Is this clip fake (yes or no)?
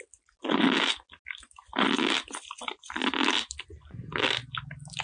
no